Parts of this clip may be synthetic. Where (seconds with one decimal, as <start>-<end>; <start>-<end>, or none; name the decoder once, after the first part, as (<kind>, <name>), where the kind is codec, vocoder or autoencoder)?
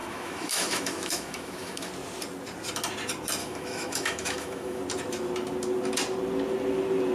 0.0-1.9 (autoencoder, DAC-VAE); 3.4-4.8